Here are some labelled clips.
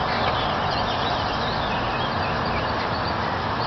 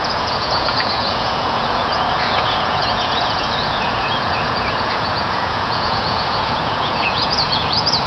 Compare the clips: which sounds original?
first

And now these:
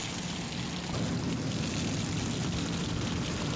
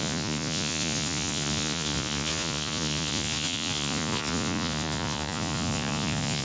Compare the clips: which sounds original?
first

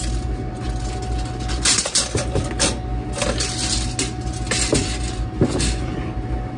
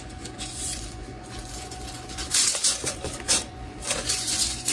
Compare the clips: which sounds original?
first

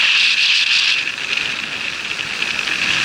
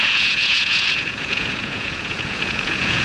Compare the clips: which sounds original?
first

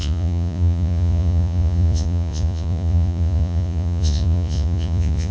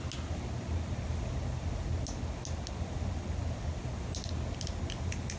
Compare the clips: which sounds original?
second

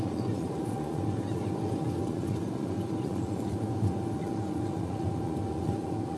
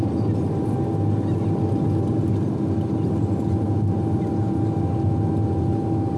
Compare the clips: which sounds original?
second